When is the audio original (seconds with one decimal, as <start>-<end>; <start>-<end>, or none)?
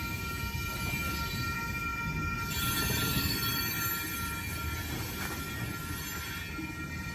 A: 0.0-1.9; 3.8-7.1